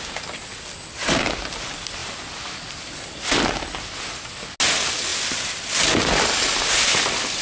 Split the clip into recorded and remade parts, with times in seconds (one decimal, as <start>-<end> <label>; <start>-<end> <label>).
0.0-7.4 recorded